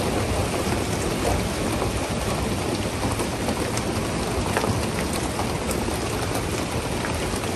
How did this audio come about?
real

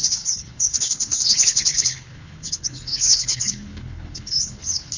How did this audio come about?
fake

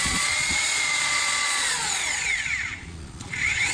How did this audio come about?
fake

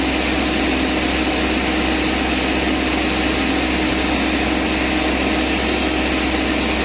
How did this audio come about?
real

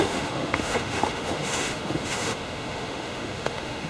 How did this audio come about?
fake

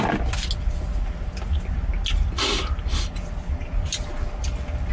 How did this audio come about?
real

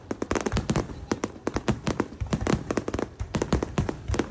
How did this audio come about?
real